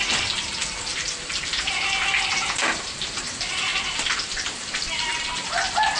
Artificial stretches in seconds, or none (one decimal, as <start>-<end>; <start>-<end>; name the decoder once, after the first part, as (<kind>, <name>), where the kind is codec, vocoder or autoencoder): 0.9-1.7 (vocoder, BigVGAN v2); 3.7-5.5